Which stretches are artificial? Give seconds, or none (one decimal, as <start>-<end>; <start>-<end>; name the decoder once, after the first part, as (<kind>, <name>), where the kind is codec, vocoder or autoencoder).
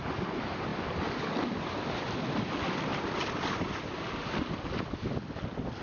2.9-3.9 (vocoder, BigVGAN v2)